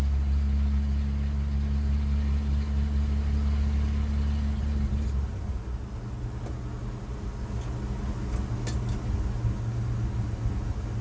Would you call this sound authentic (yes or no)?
yes